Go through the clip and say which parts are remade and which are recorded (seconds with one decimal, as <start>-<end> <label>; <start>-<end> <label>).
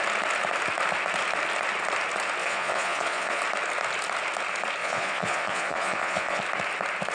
0.0-2.4 recorded; 2.4-3.4 remade; 3.4-4.8 recorded; 4.8-6.4 remade; 6.4-7.1 recorded